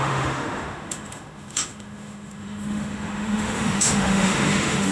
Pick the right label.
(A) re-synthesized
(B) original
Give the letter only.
A